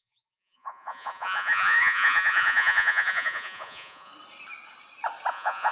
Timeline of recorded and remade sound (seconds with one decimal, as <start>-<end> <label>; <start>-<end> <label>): 0.0-4.1 remade; 4.1-5.3 recorded; 5.3-5.7 remade